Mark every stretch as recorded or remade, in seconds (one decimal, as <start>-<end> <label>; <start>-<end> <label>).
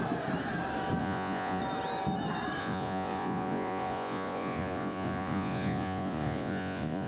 0.0-1.0 recorded; 1.0-1.6 remade; 1.6-2.6 recorded; 2.6-7.1 remade